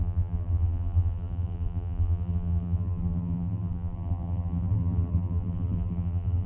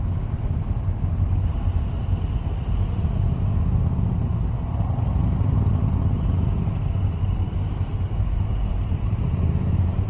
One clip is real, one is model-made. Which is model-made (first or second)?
first